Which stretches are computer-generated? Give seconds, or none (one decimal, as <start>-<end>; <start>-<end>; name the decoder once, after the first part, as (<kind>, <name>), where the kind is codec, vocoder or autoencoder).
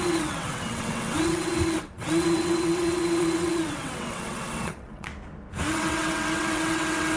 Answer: 0.0-5.1 (vocoder, WaveNeXt); 5.7-7.2